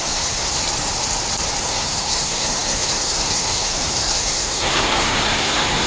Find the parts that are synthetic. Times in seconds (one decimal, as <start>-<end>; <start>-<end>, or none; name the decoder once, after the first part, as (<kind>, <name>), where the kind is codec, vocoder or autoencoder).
0.0-0.6 (codec, SNAC); 1.6-5.9